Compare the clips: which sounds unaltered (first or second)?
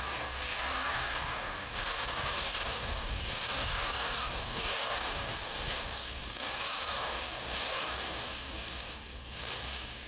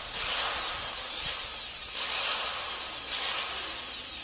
second